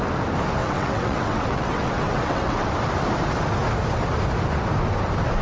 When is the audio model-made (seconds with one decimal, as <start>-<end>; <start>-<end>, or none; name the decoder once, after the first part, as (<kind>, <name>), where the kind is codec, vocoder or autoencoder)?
0.6-2.7 (vocoder, WaveNeXt)